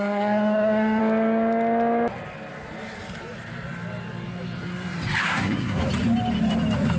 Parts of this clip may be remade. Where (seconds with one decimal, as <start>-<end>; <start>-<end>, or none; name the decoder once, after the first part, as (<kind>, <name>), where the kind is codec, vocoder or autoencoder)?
0.0-1.0 (codec, SNAC); 5.2-5.8